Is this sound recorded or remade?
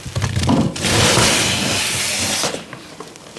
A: recorded